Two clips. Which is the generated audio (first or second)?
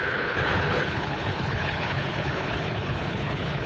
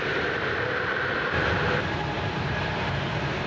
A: first